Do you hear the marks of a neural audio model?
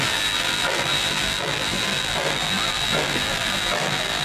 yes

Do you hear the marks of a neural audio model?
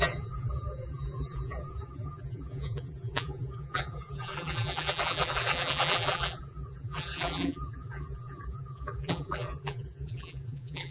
yes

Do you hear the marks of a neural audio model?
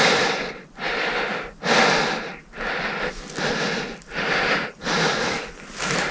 no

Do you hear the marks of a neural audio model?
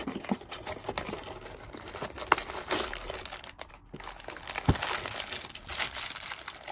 no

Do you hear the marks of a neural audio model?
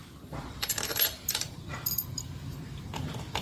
yes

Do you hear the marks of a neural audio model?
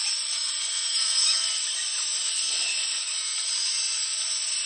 yes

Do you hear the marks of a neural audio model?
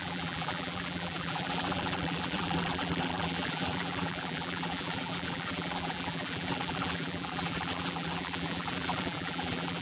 yes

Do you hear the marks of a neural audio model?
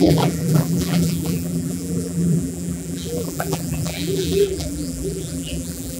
yes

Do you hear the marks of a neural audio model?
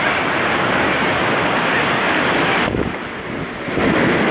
no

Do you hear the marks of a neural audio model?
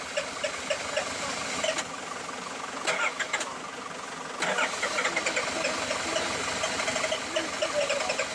no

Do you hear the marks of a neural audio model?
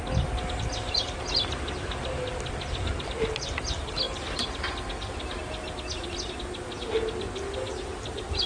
no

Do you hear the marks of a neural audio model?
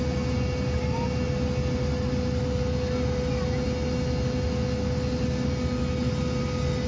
no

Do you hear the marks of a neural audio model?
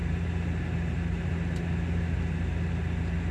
no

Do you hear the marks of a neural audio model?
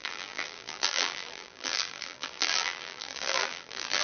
yes